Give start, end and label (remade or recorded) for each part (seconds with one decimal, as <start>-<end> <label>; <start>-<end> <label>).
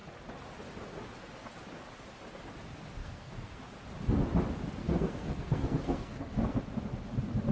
0.0-3.0 recorded; 3.0-3.6 remade; 3.6-4.8 recorded; 4.8-6.6 remade; 6.6-7.5 recorded